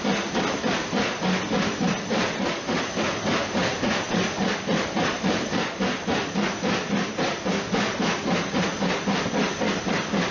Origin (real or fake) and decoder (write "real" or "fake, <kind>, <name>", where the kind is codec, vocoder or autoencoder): real